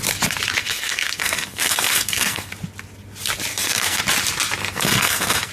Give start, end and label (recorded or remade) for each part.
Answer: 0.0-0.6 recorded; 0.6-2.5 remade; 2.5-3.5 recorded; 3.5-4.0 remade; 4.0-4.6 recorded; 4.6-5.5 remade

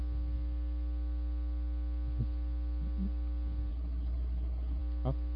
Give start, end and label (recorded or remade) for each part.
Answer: 0.0-3.7 recorded; 3.7-4.8 remade; 4.8-5.4 recorded

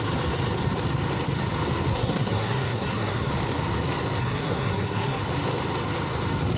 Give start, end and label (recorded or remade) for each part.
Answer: 0.0-1.9 recorded; 1.9-3.3 remade; 3.3-4.2 recorded; 4.2-5.2 remade; 5.2-6.6 recorded

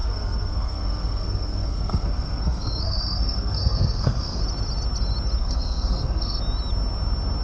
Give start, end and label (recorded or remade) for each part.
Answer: 0.0-4.4 remade; 4.4-5.4 recorded; 5.4-6.4 remade; 6.4-7.4 recorded

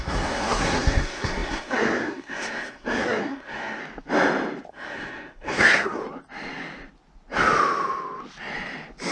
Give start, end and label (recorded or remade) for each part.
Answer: 0.0-3.8 remade; 3.8-4.7 recorded; 4.7-6.0 remade; 6.0-9.1 recorded